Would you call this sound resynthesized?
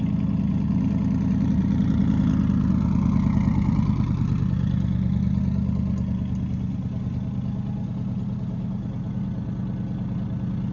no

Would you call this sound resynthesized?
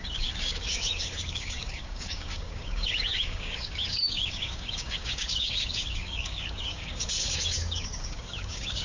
yes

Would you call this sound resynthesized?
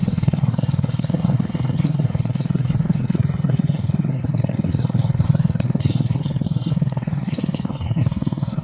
yes